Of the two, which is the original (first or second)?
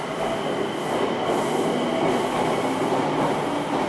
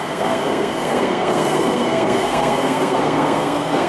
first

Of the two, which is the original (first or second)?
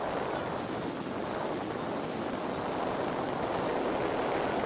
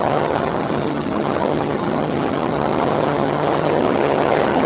first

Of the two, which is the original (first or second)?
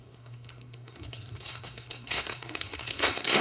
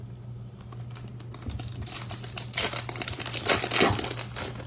second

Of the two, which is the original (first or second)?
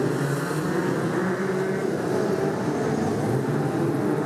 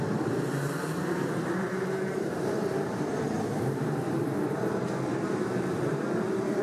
first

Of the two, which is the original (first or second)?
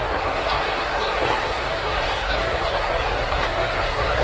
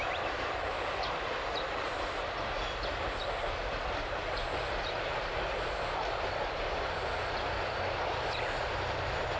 second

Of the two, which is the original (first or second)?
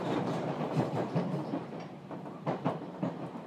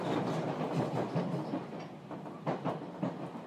second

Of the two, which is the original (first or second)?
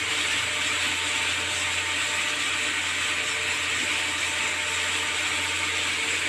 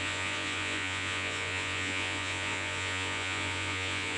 first